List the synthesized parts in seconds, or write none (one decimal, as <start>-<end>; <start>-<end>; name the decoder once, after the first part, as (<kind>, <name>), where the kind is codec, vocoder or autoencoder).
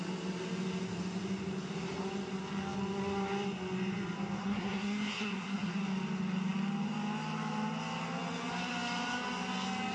4.4-5.7 (codec, SNAC)